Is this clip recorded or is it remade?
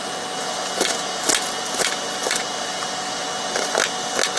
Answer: recorded